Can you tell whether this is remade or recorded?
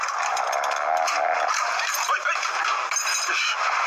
recorded